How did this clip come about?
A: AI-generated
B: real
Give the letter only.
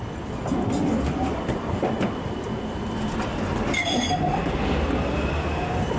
B